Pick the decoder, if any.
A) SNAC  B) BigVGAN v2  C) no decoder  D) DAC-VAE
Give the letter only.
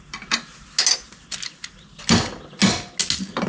C